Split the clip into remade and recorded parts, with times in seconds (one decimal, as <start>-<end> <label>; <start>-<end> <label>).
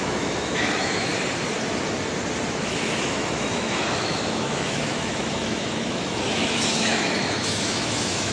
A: 0.0-1.1 remade; 1.1-2.6 recorded; 2.6-8.3 remade